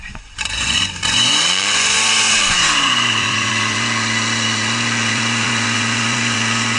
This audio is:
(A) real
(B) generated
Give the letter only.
B